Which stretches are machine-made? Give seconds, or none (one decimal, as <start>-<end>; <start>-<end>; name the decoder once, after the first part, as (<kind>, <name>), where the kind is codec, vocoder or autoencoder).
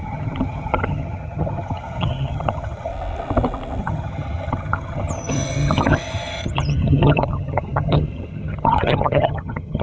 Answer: 0.0-2.9 (vocoder, HiFi-GAN); 3.8-9.8